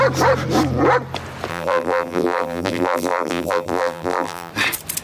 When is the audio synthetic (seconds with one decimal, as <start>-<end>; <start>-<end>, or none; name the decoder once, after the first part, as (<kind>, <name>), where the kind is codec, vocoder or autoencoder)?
1.5-4.5 (vocoder, BigVGAN v2)